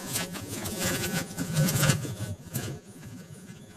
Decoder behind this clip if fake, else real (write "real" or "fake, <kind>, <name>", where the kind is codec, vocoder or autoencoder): fake, vocoder, Vocos